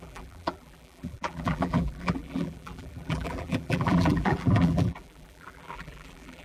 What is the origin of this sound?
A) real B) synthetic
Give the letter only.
B